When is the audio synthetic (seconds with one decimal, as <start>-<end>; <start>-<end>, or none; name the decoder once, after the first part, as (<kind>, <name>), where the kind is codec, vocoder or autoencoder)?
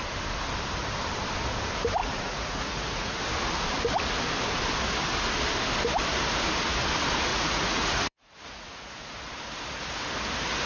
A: 2.0-3.2 (vocoder, Vocos); 7.3-9.2